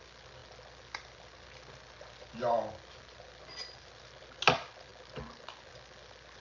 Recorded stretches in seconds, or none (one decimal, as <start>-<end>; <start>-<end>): 0.0-6.4